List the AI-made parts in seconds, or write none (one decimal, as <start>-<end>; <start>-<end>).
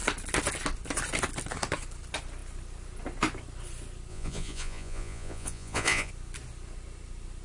4.1-6.1